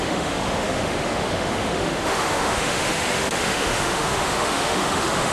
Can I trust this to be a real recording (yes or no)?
no